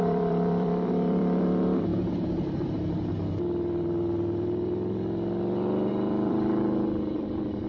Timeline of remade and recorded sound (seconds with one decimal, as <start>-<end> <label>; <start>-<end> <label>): 0.0-1.9 remade; 1.9-5.9 recorded; 5.9-7.7 remade

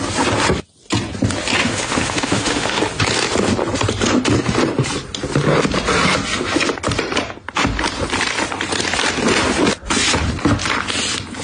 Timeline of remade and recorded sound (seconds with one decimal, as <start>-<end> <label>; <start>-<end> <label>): 0.0-1.6 recorded; 1.6-2.8 remade; 2.8-11.4 recorded

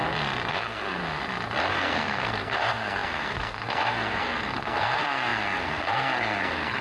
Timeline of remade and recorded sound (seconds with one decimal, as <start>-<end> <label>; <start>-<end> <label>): 0.0-0.5 recorded; 0.5-1.0 remade; 1.0-1.7 recorded; 1.7-6.8 remade

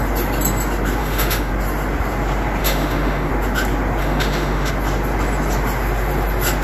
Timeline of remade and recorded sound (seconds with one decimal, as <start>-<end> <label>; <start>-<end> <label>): 0.0-1.0 recorded; 1.0-1.5 remade; 1.5-2.6 recorded; 2.6-3.3 remade; 3.3-4.0 recorded; 4.0-4.7 remade; 4.7-6.6 recorded

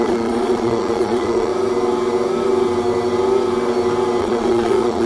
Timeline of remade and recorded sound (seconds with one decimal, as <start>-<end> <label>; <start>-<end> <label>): 0.0-1.5 remade; 1.5-4.2 recorded; 4.2-5.1 remade

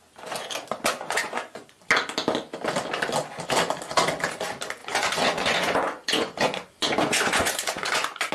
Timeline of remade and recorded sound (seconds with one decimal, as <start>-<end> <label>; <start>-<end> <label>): 0.0-0.9 recorded; 0.9-1.8 remade; 1.8-4.8 recorded; 4.8-8.3 remade

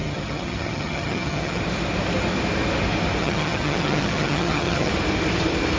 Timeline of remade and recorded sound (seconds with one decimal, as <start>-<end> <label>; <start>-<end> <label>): 0.0-1.6 remade; 1.6-3.2 recorded; 3.2-4.9 remade; 4.9-5.8 recorded

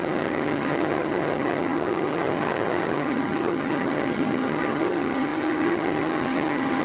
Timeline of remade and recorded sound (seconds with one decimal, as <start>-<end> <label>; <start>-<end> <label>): 0.0-6.8 remade